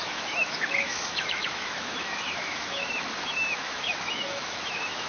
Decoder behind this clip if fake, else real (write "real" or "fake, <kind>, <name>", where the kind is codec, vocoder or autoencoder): fake, autoencoder, DAC-VAE